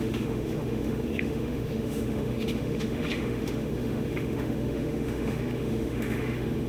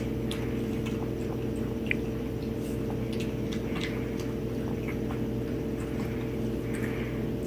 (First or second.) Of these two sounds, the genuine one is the second